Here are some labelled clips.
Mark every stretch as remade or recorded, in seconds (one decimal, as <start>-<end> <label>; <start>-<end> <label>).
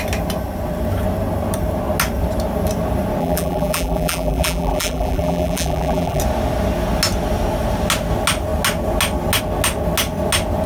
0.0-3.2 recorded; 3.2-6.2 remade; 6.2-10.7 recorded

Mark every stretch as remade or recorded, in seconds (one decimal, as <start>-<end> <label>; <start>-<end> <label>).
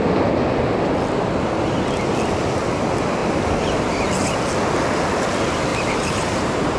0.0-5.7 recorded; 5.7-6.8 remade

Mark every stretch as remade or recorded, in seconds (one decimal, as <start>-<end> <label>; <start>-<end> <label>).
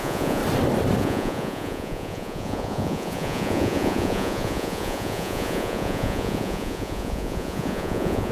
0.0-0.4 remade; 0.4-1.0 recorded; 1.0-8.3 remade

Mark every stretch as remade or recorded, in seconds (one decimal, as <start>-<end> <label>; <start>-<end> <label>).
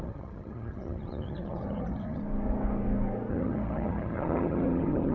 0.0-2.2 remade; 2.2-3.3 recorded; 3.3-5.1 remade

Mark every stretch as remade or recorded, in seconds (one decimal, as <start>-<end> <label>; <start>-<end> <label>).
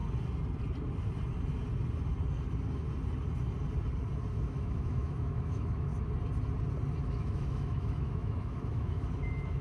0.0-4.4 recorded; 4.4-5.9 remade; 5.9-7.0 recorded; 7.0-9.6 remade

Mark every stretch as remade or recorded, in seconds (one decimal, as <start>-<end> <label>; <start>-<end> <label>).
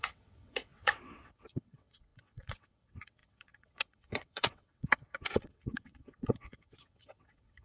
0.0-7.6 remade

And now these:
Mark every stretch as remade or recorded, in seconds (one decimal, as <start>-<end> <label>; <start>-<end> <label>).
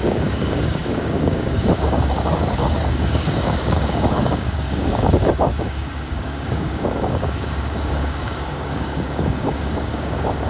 0.0-10.5 remade